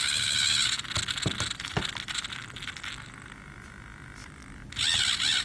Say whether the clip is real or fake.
real